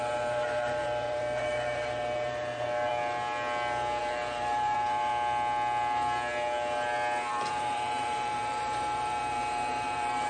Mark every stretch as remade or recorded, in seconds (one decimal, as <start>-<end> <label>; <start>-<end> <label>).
0.0-2.9 remade; 2.9-4.0 recorded; 4.0-5.1 remade; 5.1-7.3 recorded; 7.3-10.3 remade